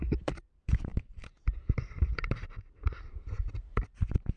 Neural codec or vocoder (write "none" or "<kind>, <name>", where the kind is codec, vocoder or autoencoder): vocoder, BigVGAN v2